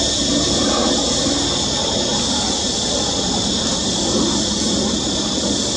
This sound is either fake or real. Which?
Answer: real